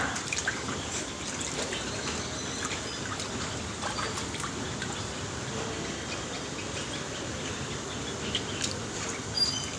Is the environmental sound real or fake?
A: real